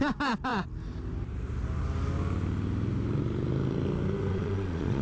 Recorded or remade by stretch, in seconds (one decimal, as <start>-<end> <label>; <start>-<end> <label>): 0.0-4.3 recorded; 4.3-5.0 remade